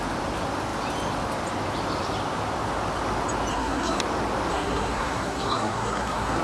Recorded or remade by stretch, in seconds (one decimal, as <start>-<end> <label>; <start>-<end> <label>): 0.0-3.5 recorded; 3.5-4.0 remade; 4.0-4.5 recorded; 4.5-6.4 remade